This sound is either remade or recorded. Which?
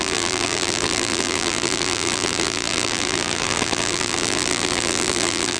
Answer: remade